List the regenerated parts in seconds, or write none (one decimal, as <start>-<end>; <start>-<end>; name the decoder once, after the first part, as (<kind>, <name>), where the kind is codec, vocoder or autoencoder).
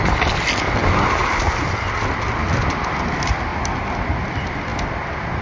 none